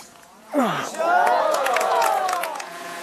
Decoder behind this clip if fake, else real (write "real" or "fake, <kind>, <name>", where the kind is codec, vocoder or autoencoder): fake, vocoder, Vocos